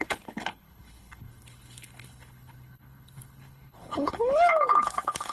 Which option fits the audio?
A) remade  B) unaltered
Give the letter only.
A